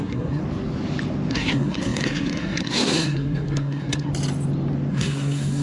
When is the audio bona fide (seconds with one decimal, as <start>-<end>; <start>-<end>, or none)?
0.4-1.3; 4.1-4.9